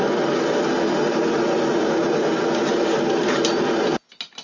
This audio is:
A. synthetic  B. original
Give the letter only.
B